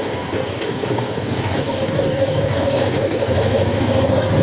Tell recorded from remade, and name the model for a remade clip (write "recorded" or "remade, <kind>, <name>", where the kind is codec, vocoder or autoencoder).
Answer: remade, codec, DAC